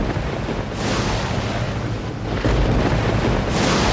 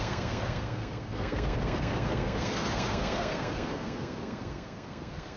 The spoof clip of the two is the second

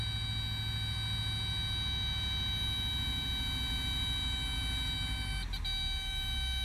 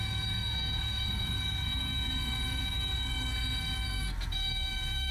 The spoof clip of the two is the second